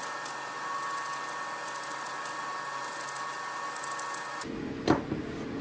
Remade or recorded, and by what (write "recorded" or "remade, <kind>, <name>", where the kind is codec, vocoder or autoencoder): recorded